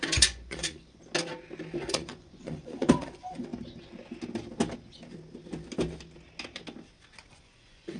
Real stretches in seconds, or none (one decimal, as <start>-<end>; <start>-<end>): 1.0-1.8; 3.5-7.3